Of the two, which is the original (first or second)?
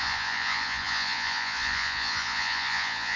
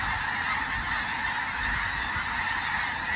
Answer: second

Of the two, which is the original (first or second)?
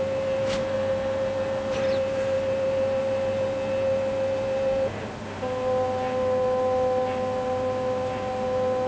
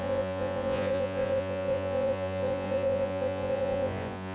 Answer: first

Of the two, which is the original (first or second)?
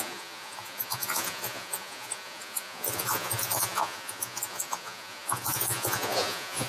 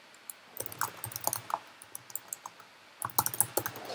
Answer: second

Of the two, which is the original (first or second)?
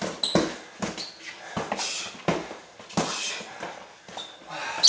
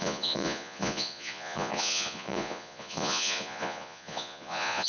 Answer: first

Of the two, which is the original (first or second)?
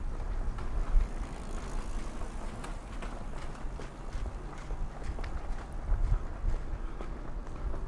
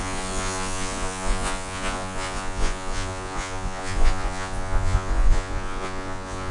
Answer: first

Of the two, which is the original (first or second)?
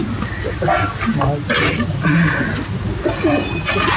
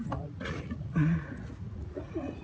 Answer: first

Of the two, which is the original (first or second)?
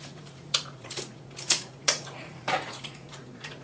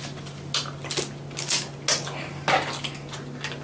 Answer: second